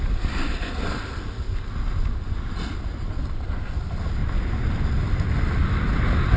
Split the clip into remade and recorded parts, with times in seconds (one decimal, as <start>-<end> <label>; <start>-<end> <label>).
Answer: 0.0-6.4 recorded